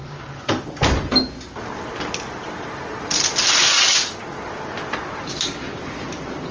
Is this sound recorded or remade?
recorded